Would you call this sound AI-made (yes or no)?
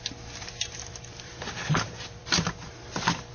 yes